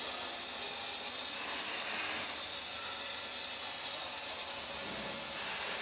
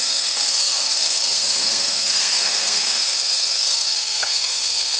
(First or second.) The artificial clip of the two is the second